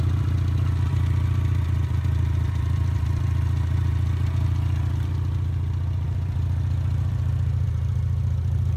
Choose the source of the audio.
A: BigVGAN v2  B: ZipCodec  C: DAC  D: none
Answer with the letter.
A